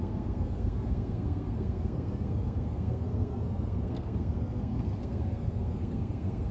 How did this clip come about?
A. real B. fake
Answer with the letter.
B